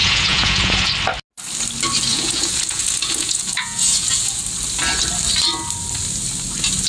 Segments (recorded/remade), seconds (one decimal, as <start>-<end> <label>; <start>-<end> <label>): 0.0-0.9 remade; 0.9-2.1 recorded; 2.1-4.4 remade; 4.4-6.9 recorded

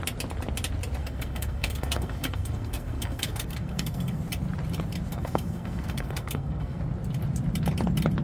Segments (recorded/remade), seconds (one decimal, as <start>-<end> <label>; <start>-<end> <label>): 0.0-1.0 recorded; 1.0-4.2 remade; 4.2-5.1 recorded; 5.1-6.8 remade; 6.8-8.2 recorded

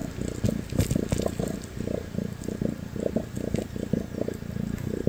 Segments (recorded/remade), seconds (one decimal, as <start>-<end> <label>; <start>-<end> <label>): 0.0-5.1 recorded

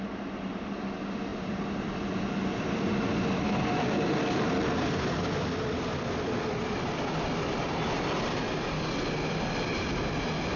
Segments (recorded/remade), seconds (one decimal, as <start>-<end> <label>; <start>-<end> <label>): 0.0-10.6 recorded

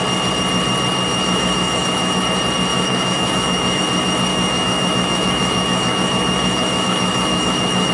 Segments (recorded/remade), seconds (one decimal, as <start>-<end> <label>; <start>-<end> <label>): 0.0-1.1 recorded; 1.1-2.2 remade; 2.2-2.7 recorded; 2.7-3.8 remade; 3.8-4.3 recorded; 4.3-7.9 remade

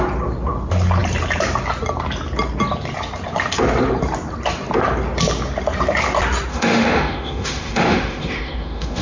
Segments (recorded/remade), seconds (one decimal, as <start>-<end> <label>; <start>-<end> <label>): 0.0-6.5 recorded; 6.5-9.0 remade

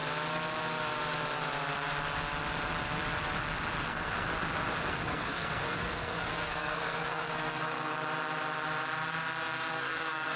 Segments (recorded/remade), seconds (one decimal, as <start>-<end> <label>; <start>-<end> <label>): 0.0-3.8 recorded; 3.8-4.3 remade; 4.3-4.9 recorded; 4.9-7.9 remade; 7.9-9.7 recorded; 9.7-10.4 remade

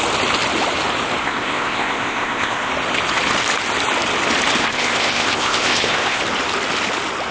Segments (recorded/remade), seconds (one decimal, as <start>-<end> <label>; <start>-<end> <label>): 0.0-1.2 recorded; 1.2-2.7 remade; 2.7-4.6 recorded; 4.6-6.2 remade; 6.2-7.3 recorded